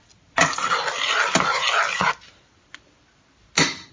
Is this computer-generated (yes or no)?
no